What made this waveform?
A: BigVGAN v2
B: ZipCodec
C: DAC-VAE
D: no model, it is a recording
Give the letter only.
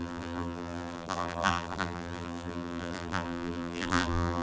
A